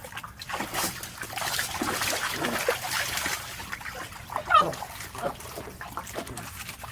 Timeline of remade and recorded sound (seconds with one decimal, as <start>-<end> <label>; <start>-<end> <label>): 0.0-6.9 recorded